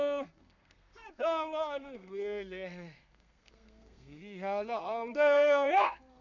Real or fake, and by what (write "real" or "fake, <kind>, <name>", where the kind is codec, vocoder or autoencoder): fake, codec, SNAC